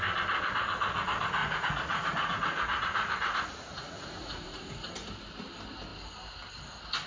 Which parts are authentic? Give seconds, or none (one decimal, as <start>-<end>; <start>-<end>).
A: 0.0-1.4; 4.9-7.1